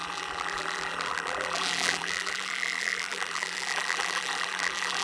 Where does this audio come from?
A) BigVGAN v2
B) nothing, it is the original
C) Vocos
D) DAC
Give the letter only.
A